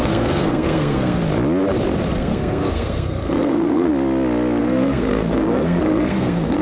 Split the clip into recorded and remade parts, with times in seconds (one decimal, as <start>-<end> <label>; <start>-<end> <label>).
0.0-1.2 remade; 1.2-2.1 recorded; 2.1-3.9 remade; 3.9-4.6 recorded; 4.6-6.6 remade